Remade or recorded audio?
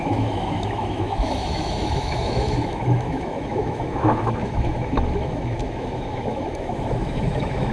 remade